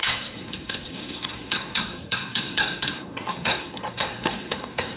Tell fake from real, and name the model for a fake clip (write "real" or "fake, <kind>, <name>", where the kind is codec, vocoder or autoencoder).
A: fake, codec, SNAC